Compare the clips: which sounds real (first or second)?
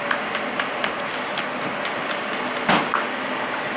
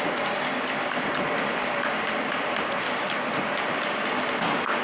first